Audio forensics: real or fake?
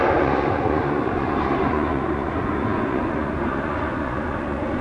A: fake